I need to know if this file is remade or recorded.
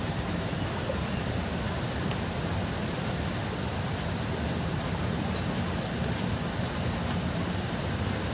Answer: recorded